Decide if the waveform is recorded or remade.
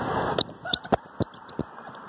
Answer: recorded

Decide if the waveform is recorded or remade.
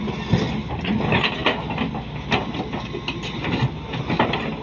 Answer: recorded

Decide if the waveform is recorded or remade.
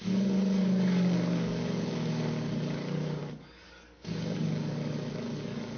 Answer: remade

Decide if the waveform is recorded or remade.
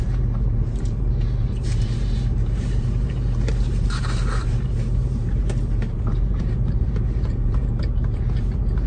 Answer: remade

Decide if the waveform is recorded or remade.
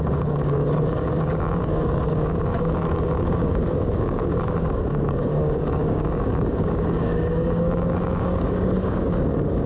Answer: remade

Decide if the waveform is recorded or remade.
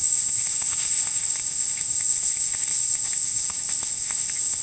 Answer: remade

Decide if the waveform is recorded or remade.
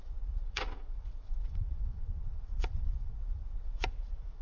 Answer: remade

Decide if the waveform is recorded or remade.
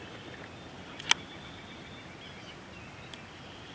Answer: recorded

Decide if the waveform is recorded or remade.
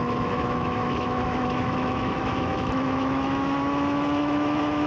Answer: remade